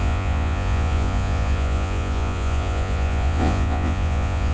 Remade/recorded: remade